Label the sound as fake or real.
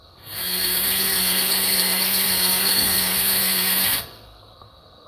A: fake